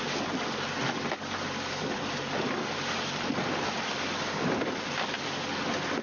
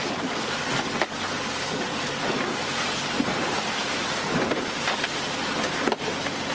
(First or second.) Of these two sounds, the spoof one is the second